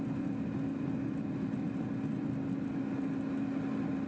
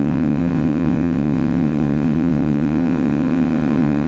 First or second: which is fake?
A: second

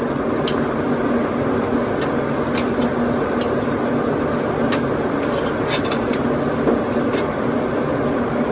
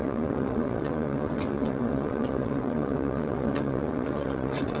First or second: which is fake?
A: second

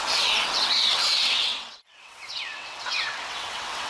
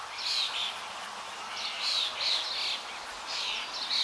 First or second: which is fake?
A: first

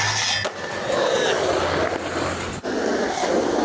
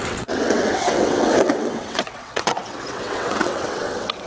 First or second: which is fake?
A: second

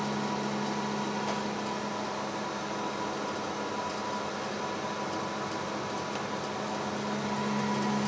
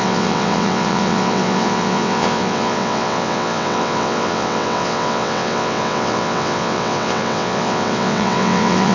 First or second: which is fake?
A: second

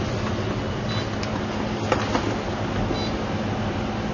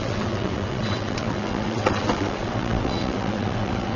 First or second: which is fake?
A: second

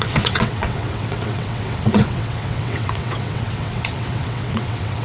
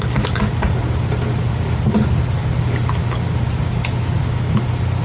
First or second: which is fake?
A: first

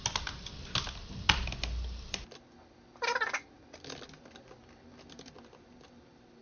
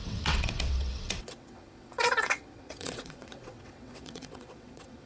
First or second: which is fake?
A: second